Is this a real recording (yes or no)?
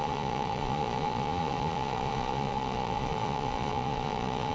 no